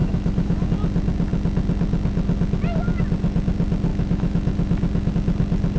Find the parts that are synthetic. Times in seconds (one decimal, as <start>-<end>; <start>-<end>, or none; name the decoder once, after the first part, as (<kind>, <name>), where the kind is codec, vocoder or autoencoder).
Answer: 0.0-0.7 (autoencoder, DAC-VAE); 3.9-5.1